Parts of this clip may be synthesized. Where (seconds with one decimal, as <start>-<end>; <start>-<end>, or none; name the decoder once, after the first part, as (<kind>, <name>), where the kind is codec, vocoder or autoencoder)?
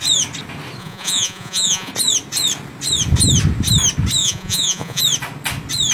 0.8-1.9 (vocoder, Vocos); 4.2-5.0